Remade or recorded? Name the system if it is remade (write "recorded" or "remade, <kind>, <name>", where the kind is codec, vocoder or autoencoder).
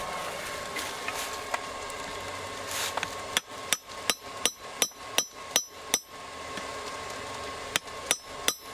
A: recorded